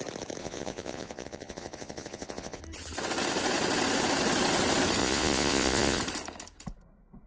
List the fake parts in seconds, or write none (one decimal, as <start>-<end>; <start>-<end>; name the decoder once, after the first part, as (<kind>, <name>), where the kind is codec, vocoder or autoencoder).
0.4-2.6 (vocoder, Vocos); 5.0-6.0